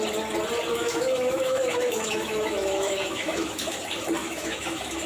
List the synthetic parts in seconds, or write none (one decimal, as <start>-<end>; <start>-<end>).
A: 0.7-3.8; 4.2-5.1